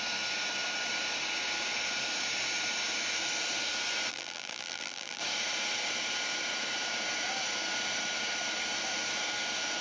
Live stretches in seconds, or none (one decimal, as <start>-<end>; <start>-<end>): 0.0-4.1; 5.2-9.8